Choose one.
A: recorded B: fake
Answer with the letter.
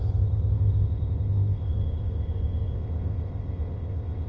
B